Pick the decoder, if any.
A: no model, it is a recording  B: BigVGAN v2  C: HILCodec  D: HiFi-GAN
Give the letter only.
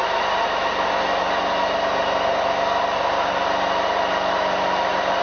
A